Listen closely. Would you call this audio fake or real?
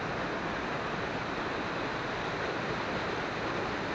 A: real